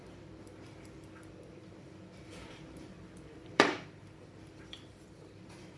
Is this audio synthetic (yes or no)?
yes